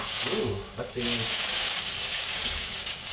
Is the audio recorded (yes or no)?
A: no